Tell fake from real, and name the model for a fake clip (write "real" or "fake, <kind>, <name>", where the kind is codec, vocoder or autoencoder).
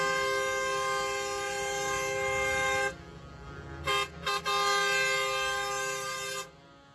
real